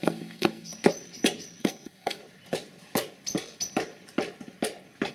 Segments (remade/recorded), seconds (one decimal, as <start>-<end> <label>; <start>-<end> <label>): 0.0-0.7 remade; 0.7-1.6 recorded; 1.6-2.2 remade; 2.2-5.1 recorded